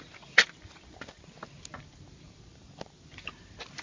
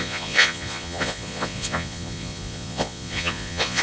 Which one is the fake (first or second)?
second